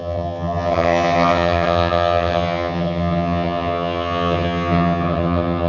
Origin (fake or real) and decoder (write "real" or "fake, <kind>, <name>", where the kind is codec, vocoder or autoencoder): fake, vocoder, HiFi-GAN